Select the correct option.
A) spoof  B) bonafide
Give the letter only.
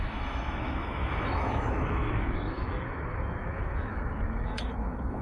A